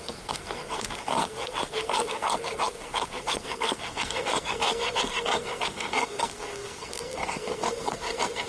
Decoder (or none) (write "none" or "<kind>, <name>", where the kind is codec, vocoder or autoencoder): codec, SNAC